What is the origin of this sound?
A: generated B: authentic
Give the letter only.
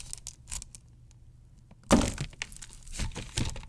B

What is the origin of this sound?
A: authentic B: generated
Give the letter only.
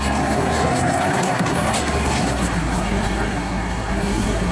B